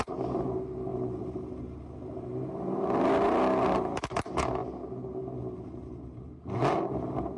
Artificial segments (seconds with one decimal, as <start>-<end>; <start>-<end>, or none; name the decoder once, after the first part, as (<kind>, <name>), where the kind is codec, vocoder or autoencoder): none